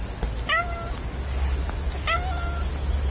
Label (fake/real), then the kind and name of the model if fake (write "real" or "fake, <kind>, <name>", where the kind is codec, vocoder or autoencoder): real